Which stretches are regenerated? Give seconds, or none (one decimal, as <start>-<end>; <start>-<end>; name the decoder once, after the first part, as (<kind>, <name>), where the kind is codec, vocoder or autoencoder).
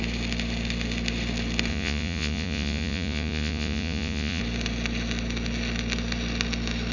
1.7-4.4 (vocoder, Vocos)